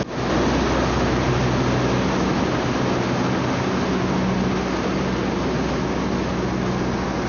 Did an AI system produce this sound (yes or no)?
no